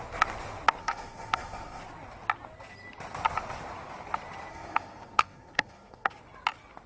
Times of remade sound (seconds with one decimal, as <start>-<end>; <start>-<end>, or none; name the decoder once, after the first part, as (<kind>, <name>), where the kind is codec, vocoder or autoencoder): 0.8-1.8 (codec, SNAC); 4.5-6.1